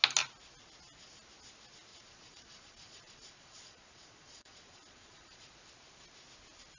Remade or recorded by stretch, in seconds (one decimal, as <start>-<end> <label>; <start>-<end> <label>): 0.0-1.9 recorded; 1.9-5.5 remade; 5.5-6.8 recorded